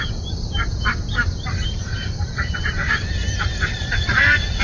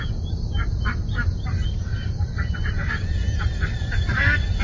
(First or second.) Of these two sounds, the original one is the second